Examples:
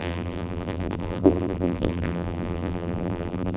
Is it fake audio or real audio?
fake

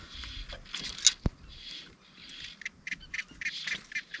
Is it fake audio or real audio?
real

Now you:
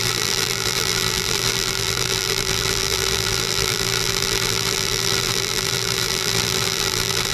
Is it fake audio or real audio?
fake